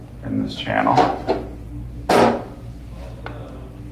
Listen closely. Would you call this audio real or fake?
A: real